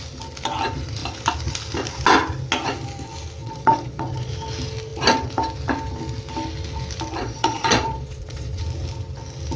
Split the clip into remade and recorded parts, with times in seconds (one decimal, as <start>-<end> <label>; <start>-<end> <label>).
0.0-3.4 recorded; 3.4-4.3 remade; 4.3-7.2 recorded; 7.2-8.6 remade; 8.6-9.6 recorded